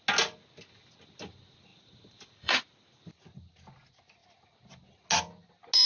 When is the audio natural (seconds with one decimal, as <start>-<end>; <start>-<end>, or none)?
0.0-1.7; 2.6-5.8